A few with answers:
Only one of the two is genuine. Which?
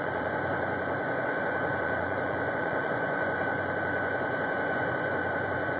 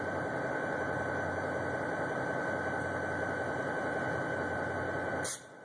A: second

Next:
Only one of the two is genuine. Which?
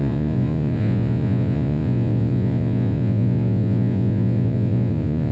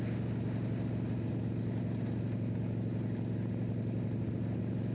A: second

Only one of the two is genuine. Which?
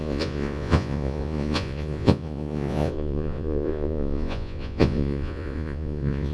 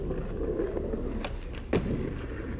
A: second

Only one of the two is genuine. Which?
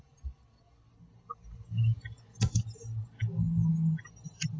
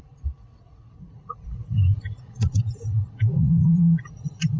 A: first